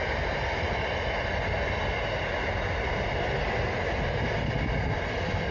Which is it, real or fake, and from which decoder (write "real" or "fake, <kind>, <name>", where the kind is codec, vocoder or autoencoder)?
real